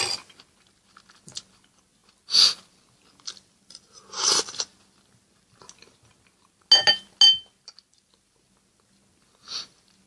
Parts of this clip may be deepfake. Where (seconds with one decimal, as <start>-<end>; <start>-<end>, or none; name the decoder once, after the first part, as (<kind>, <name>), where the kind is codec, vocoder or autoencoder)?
none